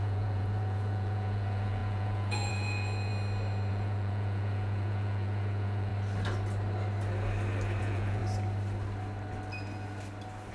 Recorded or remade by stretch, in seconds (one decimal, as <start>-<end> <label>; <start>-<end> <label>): 0.0-3.1 remade; 3.1-3.7 recorded; 3.7-5.9 remade; 5.9-7.8 recorded; 7.8-8.2 remade; 8.2-10.5 recorded